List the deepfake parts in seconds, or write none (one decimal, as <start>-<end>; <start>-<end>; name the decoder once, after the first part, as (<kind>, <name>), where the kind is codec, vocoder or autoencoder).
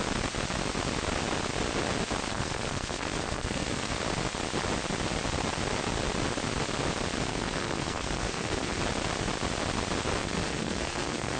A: 2.3-4.0 (codec, SNAC); 7.3-8.8; 10.2-11.4